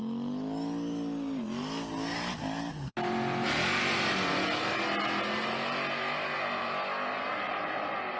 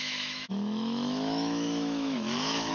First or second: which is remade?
second